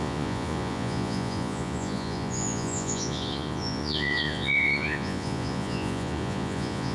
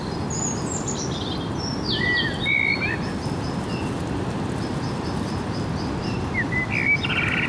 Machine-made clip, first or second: first